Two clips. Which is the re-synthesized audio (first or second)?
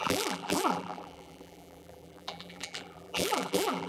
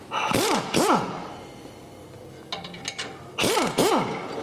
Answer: first